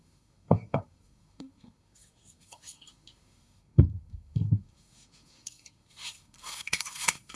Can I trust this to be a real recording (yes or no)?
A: no